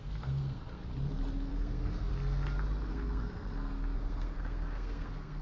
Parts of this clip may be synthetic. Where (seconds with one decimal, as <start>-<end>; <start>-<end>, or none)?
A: 0.0-0.8; 1.5-2.1; 2.9-5.4